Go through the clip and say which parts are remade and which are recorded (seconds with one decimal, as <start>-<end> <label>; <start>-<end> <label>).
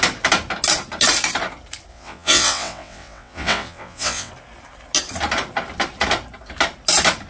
0.0-1.9 recorded; 1.9-4.3 remade; 4.3-7.3 recorded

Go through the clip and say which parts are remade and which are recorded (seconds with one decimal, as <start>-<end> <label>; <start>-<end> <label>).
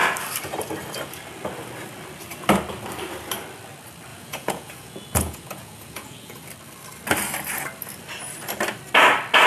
0.0-4.1 recorded; 4.1-6.4 remade; 6.4-9.5 recorded